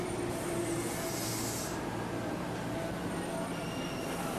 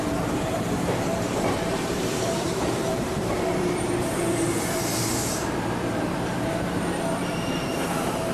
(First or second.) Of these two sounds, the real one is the first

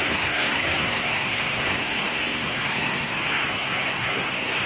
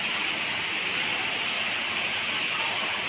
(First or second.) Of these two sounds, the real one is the second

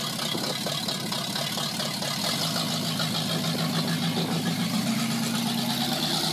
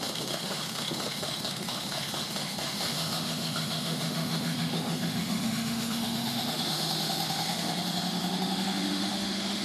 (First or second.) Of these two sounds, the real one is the first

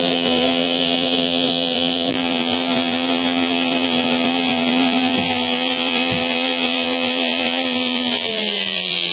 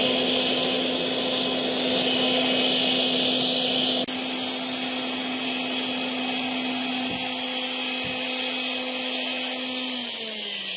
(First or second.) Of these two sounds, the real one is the second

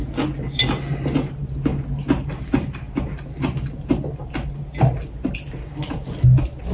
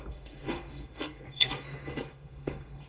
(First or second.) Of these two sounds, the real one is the first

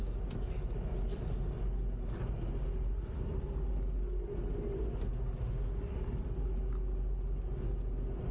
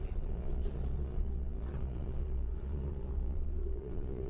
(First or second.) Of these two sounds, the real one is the first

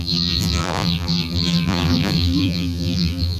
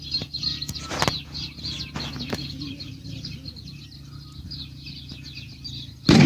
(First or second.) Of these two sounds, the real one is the second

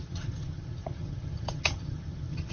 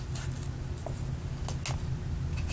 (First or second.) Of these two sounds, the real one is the second